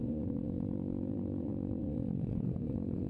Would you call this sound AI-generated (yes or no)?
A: yes